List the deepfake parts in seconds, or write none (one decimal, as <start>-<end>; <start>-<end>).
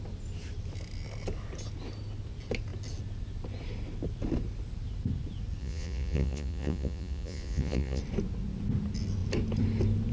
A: 5.6-8.0